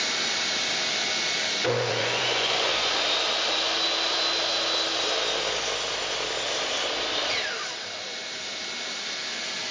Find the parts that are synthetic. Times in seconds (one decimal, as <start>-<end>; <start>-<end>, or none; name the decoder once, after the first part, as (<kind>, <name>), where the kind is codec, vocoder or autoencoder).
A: 1.6-2.9 (vocoder, Vocos)